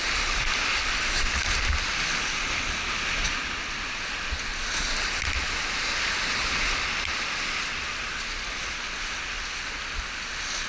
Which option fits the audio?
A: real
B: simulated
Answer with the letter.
A